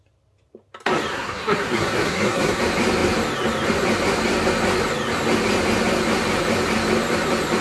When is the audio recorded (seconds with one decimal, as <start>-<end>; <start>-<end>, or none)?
0.0-1.1; 2.6-7.6